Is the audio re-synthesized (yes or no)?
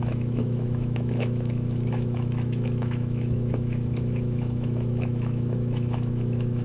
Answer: yes